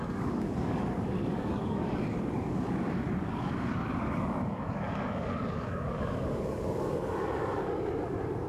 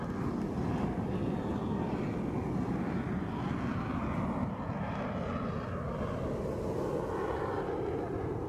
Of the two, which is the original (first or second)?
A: second